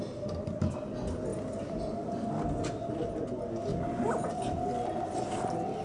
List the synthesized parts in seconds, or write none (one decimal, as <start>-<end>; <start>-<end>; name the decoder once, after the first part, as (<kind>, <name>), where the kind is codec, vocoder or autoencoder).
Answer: none